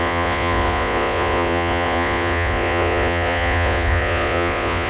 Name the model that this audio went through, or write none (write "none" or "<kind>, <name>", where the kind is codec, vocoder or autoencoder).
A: vocoder, Vocos